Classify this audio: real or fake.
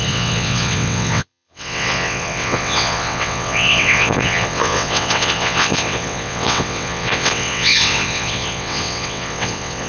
fake